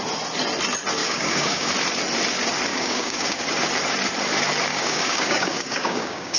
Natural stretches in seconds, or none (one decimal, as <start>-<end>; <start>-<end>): 0.0-1.0; 1.7-2.7; 3.4-4.7